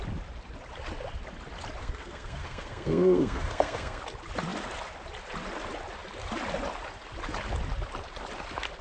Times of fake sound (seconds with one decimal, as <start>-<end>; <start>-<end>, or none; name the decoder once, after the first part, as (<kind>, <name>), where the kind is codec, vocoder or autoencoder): 1.8-4.0 (codec, SNAC)